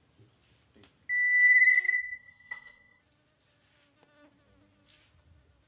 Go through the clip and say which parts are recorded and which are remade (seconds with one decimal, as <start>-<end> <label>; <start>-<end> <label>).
0.0-1.7 recorded; 1.7-3.0 remade; 3.0-5.7 recorded